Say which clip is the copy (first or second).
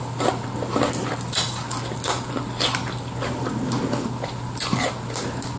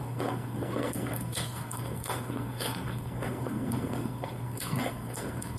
second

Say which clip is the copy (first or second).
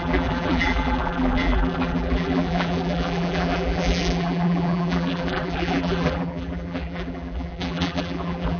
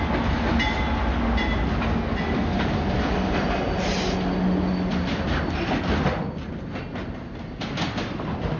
first